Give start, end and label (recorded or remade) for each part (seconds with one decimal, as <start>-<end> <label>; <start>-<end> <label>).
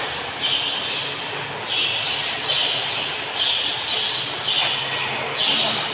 0.0-5.9 recorded